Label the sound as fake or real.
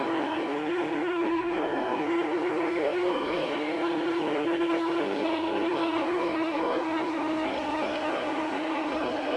fake